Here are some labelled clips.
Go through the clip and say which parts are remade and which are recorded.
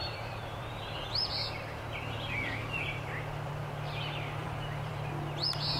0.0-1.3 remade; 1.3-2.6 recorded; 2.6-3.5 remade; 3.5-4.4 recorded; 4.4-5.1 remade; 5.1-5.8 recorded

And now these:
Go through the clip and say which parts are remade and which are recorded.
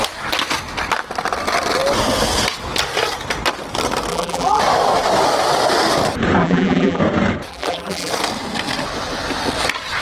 0.0-4.1 recorded; 4.1-4.6 remade; 4.6-6.4 recorded; 6.4-7.0 remade; 7.0-7.5 recorded; 7.5-8.1 remade; 8.1-10.0 recorded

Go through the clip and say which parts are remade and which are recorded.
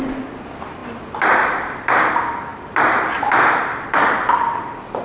0.0-0.8 recorded; 0.8-2.1 remade; 2.1-2.5 recorded; 2.5-4.6 remade; 4.6-5.0 recorded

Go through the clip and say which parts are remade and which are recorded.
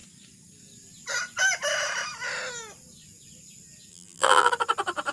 0.0-3.9 recorded; 3.9-4.5 remade; 4.5-5.1 recorded